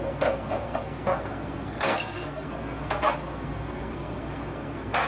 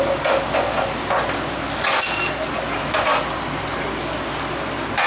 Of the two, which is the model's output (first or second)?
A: first